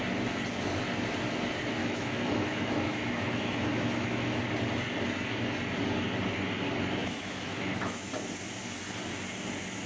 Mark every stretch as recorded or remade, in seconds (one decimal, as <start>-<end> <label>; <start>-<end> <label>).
0.0-1.8 recorded; 1.8-4.4 remade; 4.4-7.0 recorded; 7.0-8.1 remade; 8.1-9.9 recorded